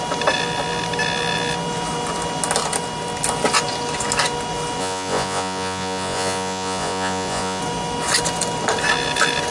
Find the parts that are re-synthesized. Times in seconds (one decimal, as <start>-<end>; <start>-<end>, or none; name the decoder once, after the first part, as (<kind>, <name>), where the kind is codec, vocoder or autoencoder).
4.8-7.6 (vocoder, Vocos)